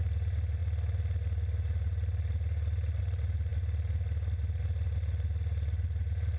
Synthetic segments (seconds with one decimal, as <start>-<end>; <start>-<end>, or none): none